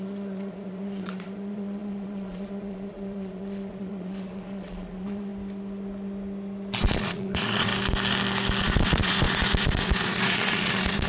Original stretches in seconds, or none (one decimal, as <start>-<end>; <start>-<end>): 5.3-6.8; 7.7-8.6